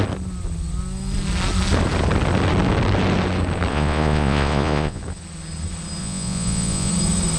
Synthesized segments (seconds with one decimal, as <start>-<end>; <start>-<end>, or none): 3.7-5.0; 6.0-6.9